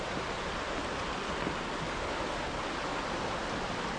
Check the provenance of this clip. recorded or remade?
recorded